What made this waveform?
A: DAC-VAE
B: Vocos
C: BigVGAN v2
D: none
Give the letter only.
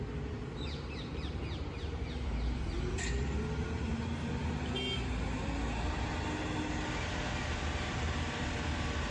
D